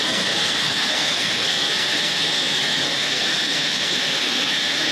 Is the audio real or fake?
fake